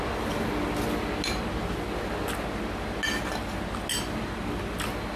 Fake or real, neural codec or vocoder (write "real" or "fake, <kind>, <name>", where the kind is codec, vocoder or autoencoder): real